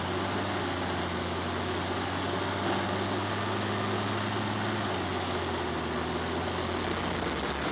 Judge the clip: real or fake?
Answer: real